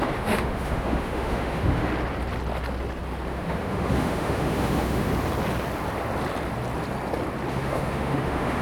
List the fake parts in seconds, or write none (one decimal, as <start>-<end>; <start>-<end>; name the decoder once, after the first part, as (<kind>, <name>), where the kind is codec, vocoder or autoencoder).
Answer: 0.0-1.9 (autoencoder, DAC-VAE); 3.3-5.1; 7.5-8.6